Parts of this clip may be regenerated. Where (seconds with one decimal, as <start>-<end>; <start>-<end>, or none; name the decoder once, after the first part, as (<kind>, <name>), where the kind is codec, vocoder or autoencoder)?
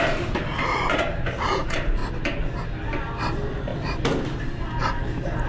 0.0-2.0 (vocoder, BigVGAN v2); 3.0-3.7; 4.4-5.5